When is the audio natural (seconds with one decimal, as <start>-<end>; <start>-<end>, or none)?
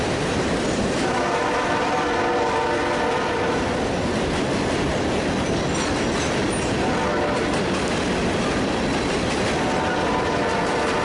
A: 1.9-11.0